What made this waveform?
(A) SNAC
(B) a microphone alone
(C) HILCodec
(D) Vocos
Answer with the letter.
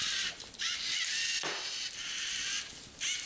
B